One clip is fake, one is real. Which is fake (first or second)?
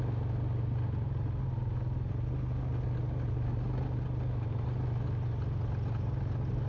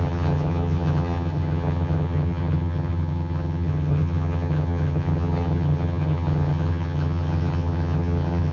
second